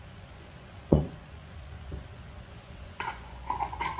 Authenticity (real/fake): fake